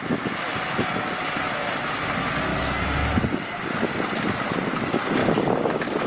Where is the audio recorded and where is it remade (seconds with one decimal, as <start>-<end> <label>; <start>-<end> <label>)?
0.0-6.1 recorded